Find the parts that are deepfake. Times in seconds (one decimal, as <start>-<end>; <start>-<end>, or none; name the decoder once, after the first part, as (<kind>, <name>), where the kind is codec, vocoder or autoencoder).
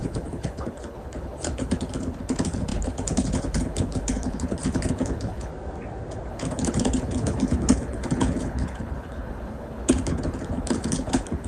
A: 0.0-5.5 (codec, HILCodec); 6.3-11.5